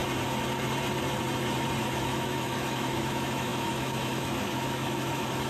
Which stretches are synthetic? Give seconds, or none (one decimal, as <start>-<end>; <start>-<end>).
1.8-5.5

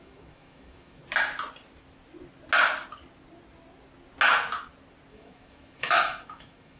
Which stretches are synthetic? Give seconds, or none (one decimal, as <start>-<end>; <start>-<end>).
0.0-1.0; 5.1-6.8

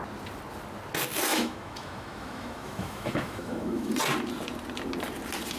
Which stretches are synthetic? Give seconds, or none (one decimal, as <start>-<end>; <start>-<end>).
1.3-3.9

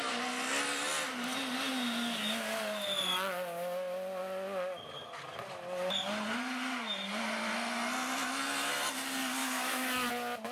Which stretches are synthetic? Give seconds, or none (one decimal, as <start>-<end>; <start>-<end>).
9.4-10.1